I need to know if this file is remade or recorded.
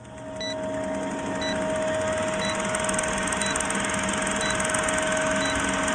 recorded